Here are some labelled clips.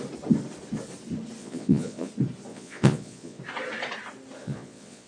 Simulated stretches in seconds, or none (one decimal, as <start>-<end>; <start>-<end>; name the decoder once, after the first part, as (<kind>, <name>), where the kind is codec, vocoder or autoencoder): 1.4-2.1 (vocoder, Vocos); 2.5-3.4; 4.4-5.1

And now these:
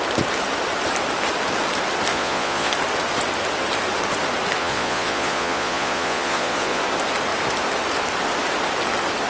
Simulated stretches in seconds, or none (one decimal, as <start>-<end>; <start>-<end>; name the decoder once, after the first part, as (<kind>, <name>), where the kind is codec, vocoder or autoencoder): 2.1-2.7 (vocoder, Vocos); 4.6-6.8

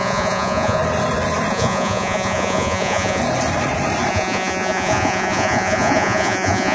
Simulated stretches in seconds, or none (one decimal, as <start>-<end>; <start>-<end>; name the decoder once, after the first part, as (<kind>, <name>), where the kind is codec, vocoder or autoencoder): 0.0-0.8 (vocoder, Vocos); 1.5-3.2; 4.1-6.7

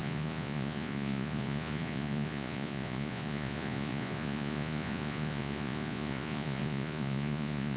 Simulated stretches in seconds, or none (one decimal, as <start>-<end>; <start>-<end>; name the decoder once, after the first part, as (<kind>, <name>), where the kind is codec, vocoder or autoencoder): 0.0-7.8 (vocoder, Vocos)

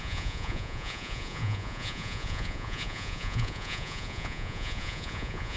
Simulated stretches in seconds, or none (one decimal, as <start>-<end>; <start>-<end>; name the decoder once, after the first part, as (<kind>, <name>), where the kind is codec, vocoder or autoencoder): 0.0-5.6 (vocoder, Vocos)